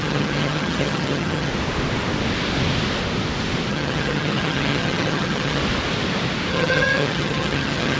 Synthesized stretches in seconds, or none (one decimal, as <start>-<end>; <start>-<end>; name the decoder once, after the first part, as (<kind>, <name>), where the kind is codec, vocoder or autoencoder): 0.0-1.5 (vocoder, HiFi-GAN); 3.7-5.6; 6.5-8.0